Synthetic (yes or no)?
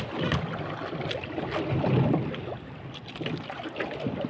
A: no